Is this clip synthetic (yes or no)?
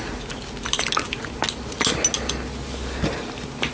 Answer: no